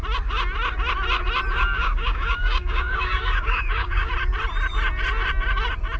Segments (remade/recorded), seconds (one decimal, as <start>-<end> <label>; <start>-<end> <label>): 0.0-1.5 recorded; 1.5-4.1 remade; 4.1-6.0 recorded